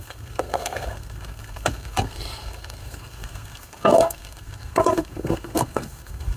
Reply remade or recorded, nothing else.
remade